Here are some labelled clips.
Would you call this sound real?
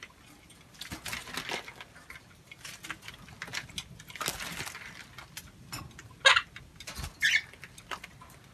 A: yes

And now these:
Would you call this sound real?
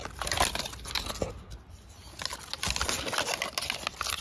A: yes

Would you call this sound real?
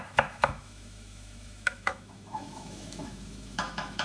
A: no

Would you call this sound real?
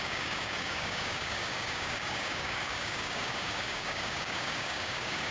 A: no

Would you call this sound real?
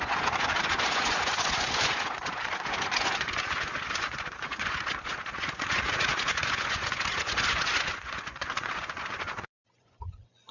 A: no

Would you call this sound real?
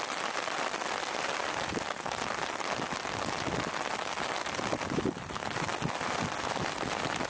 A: yes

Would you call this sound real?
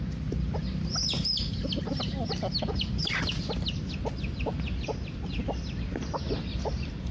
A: yes